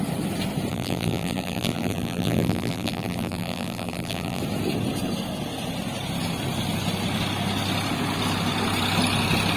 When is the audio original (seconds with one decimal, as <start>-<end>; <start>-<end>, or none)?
0.0-0.7; 4.4-9.6